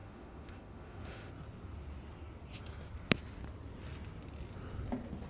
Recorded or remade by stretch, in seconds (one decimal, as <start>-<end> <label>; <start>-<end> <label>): 0.0-1.3 remade; 1.3-5.3 recorded

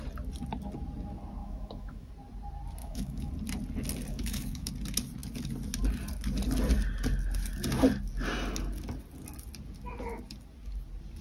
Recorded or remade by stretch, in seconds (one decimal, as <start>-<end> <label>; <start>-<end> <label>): 0.0-1.4 recorded; 1.4-2.1 remade; 2.1-2.8 recorded; 2.8-3.3 remade; 3.3-4.1 recorded; 4.1-4.7 remade; 4.7-11.2 recorded

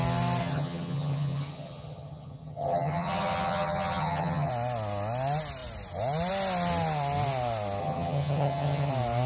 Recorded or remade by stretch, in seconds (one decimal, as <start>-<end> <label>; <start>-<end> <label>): 0.0-0.4 recorded; 0.4-4.5 remade; 4.5-7.8 recorded; 7.8-8.9 remade; 8.9-9.3 recorded

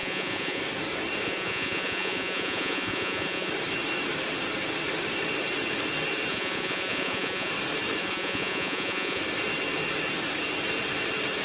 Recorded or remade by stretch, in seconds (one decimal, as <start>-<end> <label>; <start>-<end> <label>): 0.0-0.6 remade; 0.6-1.2 recorded; 1.2-3.5 remade; 3.5-6.3 recorded; 6.3-7.5 remade; 7.5-8.0 recorded; 8.0-9.2 remade; 9.2-11.4 recorded

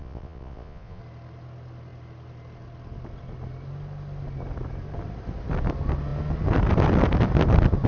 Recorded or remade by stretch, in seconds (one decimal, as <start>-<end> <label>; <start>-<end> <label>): 0.0-1.0 remade; 1.0-7.9 recorded

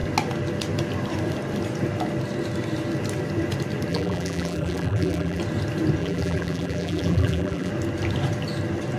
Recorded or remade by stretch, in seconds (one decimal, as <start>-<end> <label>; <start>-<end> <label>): 0.0-3.9 recorded; 3.9-5.4 remade; 5.4-6.0 recorded; 6.0-7.7 remade; 7.7-9.0 recorded

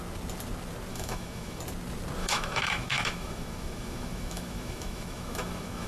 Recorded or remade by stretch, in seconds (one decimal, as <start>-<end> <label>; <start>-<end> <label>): 0.0-0.9 recorded; 0.9-1.6 remade; 1.6-2.2 recorded; 2.2-5.9 remade